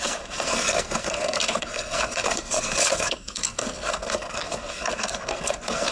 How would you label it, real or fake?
fake